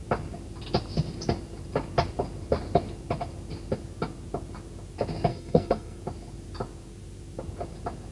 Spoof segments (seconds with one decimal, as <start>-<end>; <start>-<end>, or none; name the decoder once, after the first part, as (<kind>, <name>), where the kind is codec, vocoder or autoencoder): 5.3-6.0 (codec, SNAC)